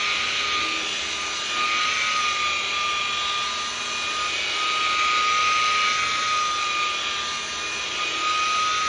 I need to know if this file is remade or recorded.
recorded